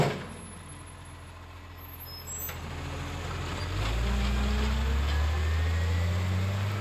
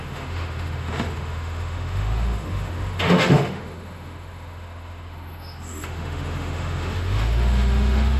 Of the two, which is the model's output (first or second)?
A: second